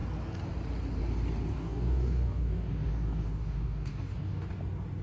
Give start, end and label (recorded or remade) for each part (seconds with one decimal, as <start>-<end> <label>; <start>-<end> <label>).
0.0-1.5 recorded; 1.5-4.5 remade; 4.5-5.0 recorded